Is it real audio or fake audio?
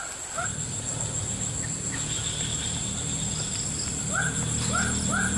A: fake